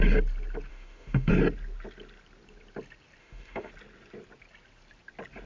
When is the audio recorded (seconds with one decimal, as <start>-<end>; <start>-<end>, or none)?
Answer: 0.0-0.7; 1.3-3.2; 3.7-5.5